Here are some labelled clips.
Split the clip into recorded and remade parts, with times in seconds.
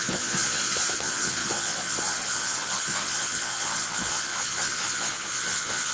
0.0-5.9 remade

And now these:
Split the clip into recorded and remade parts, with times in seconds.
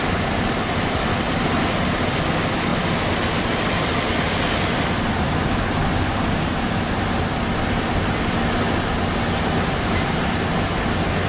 0.0-11.3 recorded